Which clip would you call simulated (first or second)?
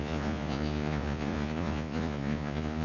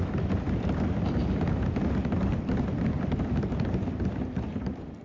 first